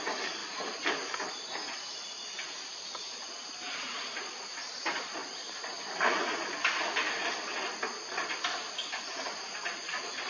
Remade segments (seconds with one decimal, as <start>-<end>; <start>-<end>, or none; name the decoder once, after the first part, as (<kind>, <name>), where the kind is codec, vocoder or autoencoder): none